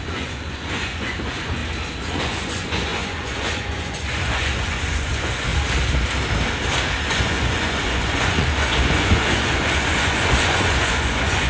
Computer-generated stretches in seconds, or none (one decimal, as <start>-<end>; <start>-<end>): 0.0-1.6; 2.1-5.5; 7.1-11.5